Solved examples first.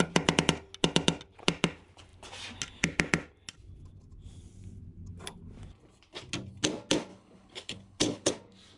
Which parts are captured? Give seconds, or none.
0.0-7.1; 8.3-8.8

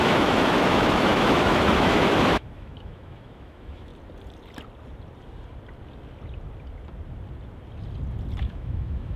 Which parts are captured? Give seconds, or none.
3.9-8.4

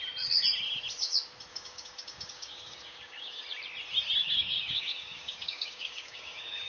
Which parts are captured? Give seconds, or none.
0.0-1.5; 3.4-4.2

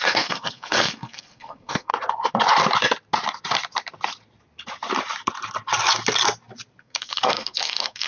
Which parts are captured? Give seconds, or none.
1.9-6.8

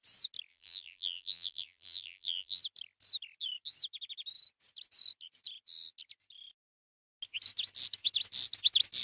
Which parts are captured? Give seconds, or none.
0.0-0.5; 2.6-9.0

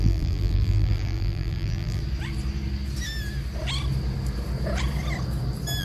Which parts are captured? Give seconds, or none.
2.0-5.8

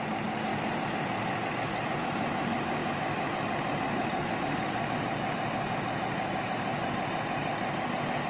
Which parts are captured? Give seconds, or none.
0.0-8.3

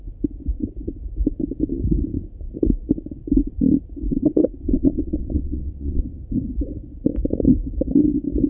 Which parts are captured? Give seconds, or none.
0.0-4.1; 6.0-8.5